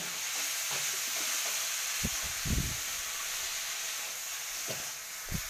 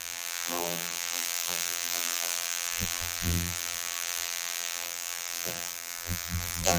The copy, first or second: second